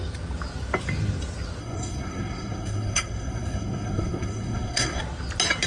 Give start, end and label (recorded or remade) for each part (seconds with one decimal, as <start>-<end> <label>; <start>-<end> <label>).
0.0-1.6 recorded; 1.6-5.0 remade; 5.0-5.7 recorded